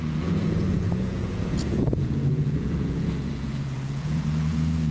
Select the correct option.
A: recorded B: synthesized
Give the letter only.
B